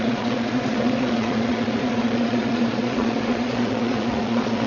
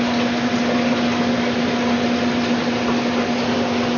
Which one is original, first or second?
second